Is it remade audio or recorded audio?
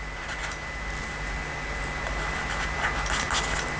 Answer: recorded